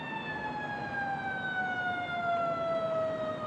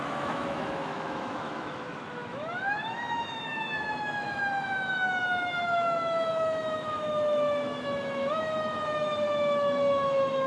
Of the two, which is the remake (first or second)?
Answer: second